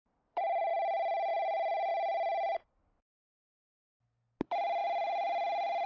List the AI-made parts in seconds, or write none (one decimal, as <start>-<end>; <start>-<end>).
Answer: 0.0-0.7; 1.3-1.9; 4.8-5.9